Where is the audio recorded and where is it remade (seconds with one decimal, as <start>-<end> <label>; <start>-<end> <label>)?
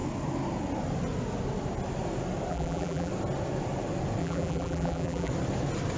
0.0-2.5 recorded; 2.5-3.1 remade; 3.1-4.2 recorded; 4.2-5.3 remade; 5.3-6.0 recorded